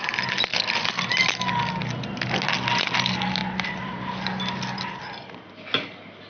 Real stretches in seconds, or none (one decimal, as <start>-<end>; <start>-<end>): 0.0-6.3